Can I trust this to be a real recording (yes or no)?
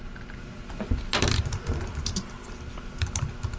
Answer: yes